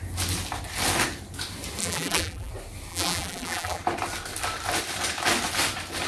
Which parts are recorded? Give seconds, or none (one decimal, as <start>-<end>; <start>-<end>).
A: 0.0-1.8; 2.5-2.9; 3.8-6.1